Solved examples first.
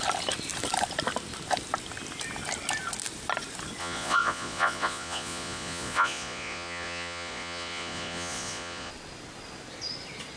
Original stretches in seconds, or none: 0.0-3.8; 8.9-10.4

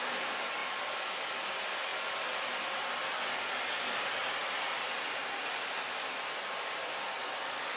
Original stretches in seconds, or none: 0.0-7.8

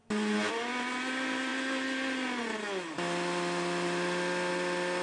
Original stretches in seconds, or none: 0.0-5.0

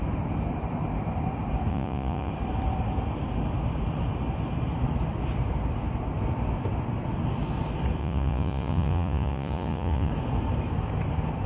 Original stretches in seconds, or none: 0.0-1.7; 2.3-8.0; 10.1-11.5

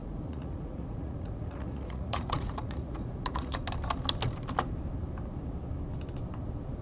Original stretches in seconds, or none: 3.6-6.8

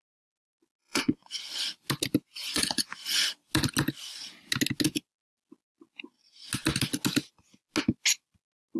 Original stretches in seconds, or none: 0.0-0.8; 1.4-2.2; 3.3-8.8

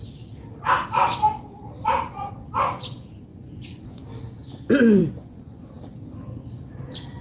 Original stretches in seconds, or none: 0.0-3.3; 4.0-5.0; 5.6-7.2

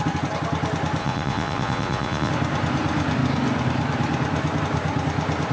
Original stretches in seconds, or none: 0.0-1.0; 2.3-5.5